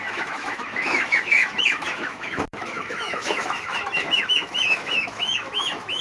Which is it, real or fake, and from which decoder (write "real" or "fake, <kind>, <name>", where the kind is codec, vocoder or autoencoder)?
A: fake, autoencoder, DAC-VAE